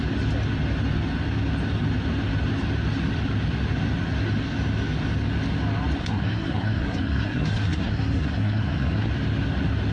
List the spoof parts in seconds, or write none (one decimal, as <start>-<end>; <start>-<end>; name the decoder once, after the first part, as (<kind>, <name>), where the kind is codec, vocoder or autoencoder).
6.0-9.1 (codec, SNAC)